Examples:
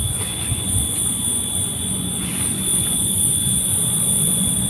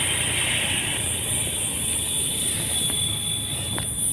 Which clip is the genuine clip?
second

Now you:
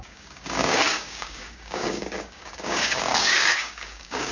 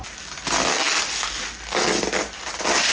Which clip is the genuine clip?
second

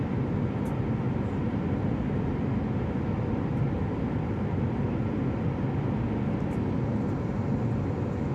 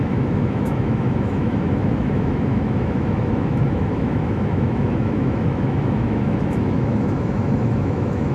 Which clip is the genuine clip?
first